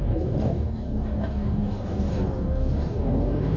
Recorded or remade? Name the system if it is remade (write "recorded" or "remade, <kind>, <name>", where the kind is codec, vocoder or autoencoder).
remade, codec, DAC